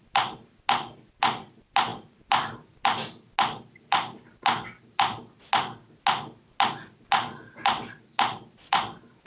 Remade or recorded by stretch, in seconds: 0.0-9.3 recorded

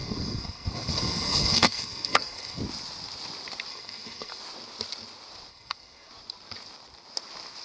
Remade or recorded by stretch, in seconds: 0.0-2.6 remade; 2.6-3.7 recorded; 3.7-4.4 remade; 4.4-5.5 recorded; 5.5-6.1 remade; 6.1-7.6 recorded

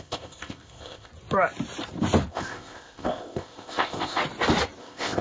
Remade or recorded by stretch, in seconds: 0.0-1.1 remade; 1.1-2.3 recorded; 2.3-4.2 remade; 4.2-4.8 recorded; 4.8-5.2 remade

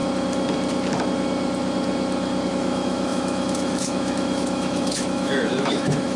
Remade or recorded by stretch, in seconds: 0.0-2.5 recorded; 2.5-6.2 remade

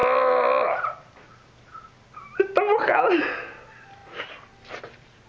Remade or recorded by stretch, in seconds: 0.0-4.0 recorded; 4.0-4.8 remade; 4.8-5.3 recorded

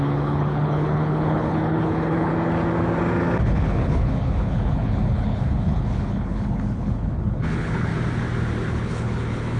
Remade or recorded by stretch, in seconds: 0.0-2.3 remade; 2.3-3.4 recorded; 3.4-7.9 remade; 7.9-8.7 recorded; 8.7-9.6 remade

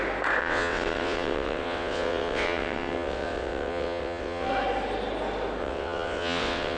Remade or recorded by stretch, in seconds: 0.0-0.4 recorded; 0.4-4.5 remade; 4.5-5.6 recorded; 5.6-6.8 remade

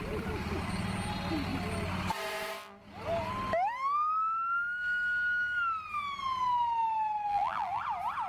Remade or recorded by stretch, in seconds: 0.0-7.3 recorded; 7.3-7.8 remade; 7.8-8.3 recorded